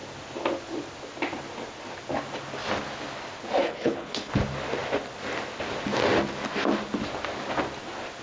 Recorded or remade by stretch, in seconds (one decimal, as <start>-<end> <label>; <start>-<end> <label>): 0.0-3.6 recorded; 3.6-4.3 remade; 4.3-8.2 recorded